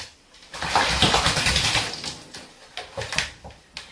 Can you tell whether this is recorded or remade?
recorded